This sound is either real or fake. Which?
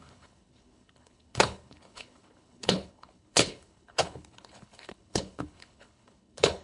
fake